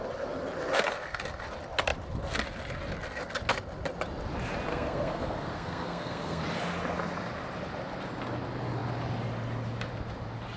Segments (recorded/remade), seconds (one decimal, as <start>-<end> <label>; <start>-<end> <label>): 0.0-4.7 recorded; 4.7-6.4 remade; 6.4-10.6 recorded